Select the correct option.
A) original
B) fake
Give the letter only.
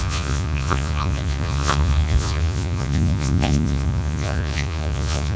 B